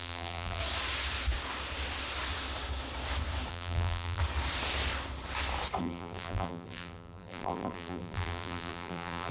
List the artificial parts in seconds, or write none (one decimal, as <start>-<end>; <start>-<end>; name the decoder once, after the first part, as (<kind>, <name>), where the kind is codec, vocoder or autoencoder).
0.0-0.6 (vocoder, BigVGAN v2); 3.5-4.2; 5.8-9.3